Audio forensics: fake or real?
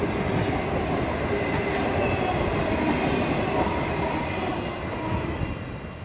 real